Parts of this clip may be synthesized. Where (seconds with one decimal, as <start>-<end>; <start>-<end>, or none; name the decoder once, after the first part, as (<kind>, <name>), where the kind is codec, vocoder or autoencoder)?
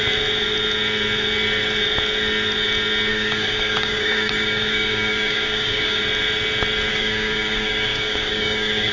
3.1-6.0 (codec, DAC); 6.9-8.9